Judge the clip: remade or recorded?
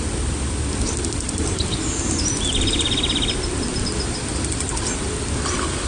recorded